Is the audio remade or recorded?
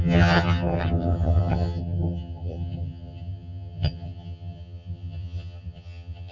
remade